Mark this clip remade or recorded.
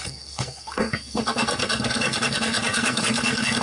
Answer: remade